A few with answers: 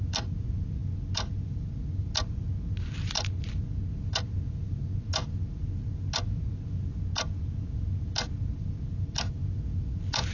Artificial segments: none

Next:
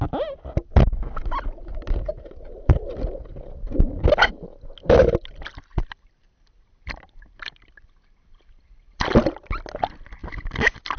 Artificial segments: 5.7-9.5 (vocoder, BigVGAN v2); 10.2-11.0

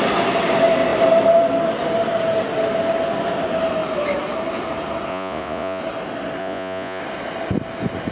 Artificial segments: 5.1-5.8 (vocoder, Vocos); 6.4-7.0

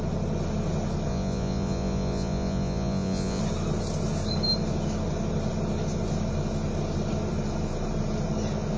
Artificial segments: 1.1-3.4 (vocoder, Vocos)

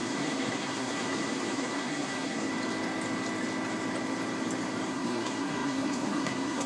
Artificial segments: 0.0-2.5 (codec, SNAC); 4.9-6.7

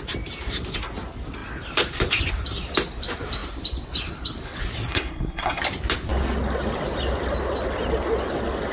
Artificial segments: 4.9-5.6 (codec, SNAC)

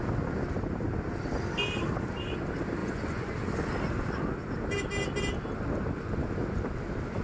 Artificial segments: 2.8-3.3 (vocoder, Vocos)

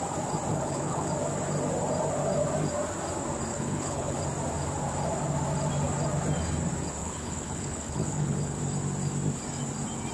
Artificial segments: 0.5-1.1 (codec, HILCodec); 3.5-4.2; 7.0-8.6